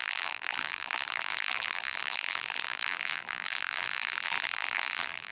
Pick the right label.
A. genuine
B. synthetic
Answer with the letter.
B